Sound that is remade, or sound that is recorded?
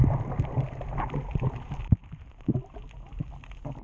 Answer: recorded